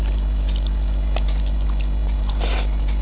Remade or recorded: recorded